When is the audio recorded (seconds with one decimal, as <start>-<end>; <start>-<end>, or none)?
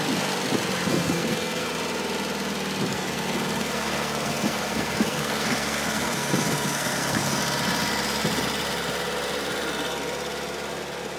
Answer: 0.0-0.9; 1.7-2.9; 7.4-11.2